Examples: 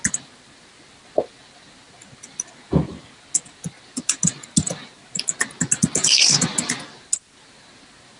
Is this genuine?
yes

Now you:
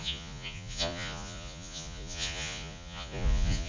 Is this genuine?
no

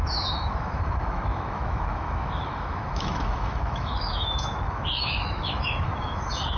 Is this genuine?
no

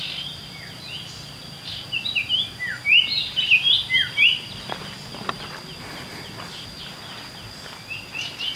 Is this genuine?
yes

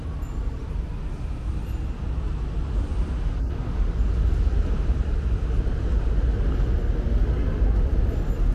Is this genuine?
yes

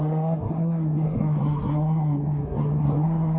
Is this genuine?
no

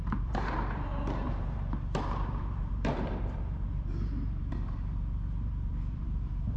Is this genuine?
no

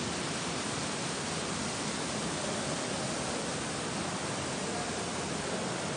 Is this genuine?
yes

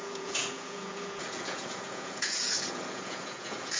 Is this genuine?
no